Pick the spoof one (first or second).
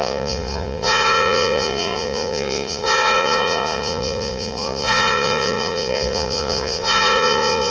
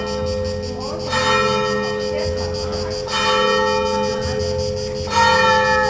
first